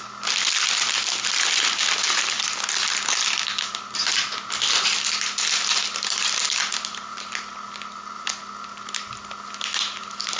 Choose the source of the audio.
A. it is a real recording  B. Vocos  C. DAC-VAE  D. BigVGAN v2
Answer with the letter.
A